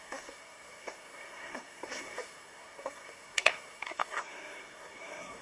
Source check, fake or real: fake